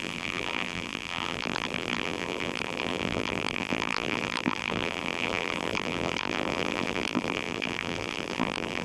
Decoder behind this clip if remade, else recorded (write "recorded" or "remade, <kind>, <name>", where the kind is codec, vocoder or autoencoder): remade, vocoder, BigVGAN v2